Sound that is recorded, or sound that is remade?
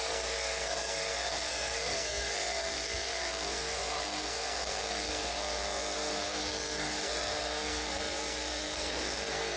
remade